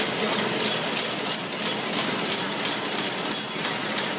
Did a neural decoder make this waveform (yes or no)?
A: no